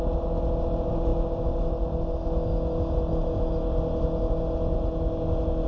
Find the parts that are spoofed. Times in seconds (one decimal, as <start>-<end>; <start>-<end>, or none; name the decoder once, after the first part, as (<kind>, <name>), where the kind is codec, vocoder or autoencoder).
none